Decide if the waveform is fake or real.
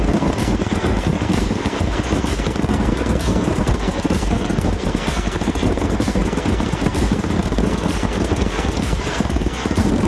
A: fake